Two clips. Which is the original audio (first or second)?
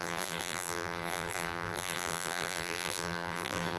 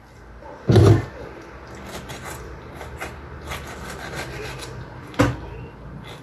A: second